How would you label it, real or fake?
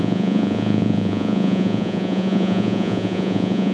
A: fake